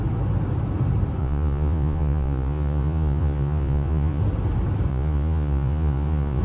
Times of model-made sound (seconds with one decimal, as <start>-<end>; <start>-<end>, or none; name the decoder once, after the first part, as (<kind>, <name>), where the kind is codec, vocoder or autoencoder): 1.2-4.2 (vocoder, Vocos); 4.9-6.4